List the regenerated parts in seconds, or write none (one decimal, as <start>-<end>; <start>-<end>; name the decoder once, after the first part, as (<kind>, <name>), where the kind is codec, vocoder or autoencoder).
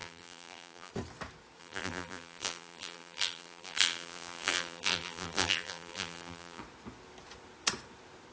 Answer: 0.0-0.9 (vocoder, BigVGAN v2); 1.6-6.6